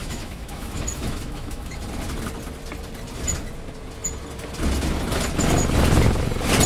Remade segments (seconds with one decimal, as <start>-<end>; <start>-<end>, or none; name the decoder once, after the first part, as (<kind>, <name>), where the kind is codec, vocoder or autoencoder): 0.0-1.8 (autoencoder, DAC-VAE)